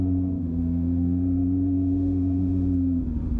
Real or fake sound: fake